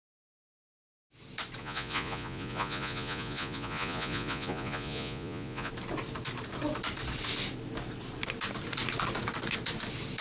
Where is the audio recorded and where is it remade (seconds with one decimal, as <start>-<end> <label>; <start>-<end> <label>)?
0.0-1.6 recorded; 1.6-5.7 remade; 5.7-10.2 recorded